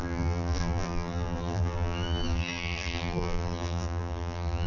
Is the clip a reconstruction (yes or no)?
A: yes